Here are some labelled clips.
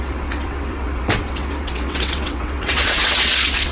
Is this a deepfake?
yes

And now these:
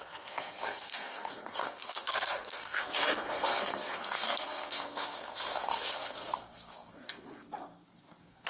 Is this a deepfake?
yes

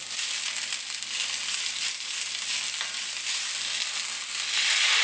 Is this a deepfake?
no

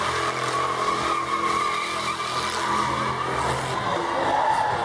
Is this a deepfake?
no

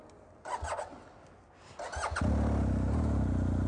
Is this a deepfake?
no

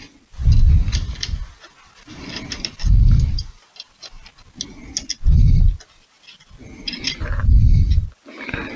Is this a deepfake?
no